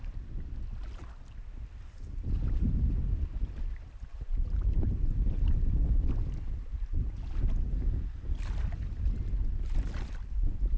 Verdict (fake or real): real